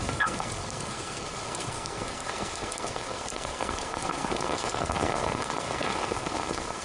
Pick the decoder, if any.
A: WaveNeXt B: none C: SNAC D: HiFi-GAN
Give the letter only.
C